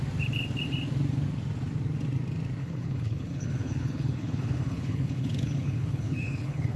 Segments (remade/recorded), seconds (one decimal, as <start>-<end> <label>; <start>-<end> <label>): 0.0-2.6 recorded; 2.6-6.8 remade